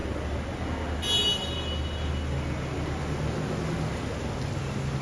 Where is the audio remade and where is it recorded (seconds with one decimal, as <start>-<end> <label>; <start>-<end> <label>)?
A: 0.0-5.0 recorded